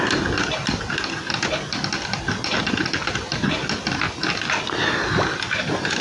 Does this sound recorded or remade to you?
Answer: recorded